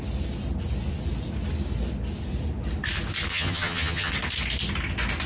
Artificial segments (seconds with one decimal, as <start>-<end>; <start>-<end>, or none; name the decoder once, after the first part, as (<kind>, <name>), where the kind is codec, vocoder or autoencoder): 3.3-4.1 (vocoder, HiFi-GAN)